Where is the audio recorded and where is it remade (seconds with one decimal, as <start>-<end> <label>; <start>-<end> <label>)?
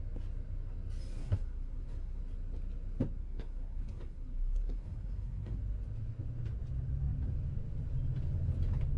0.0-1.2 recorded; 1.2-2.2 remade; 2.2-3.2 recorded; 3.2-5.6 remade; 5.6-9.0 recorded